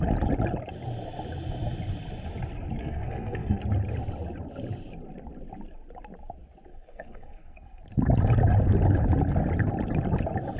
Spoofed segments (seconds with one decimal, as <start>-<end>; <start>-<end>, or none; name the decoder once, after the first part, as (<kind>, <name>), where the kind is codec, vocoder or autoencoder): 2.8-3.6 (codec, SNAC); 6.7-7.8